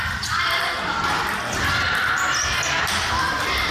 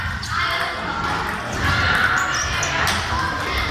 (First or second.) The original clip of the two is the second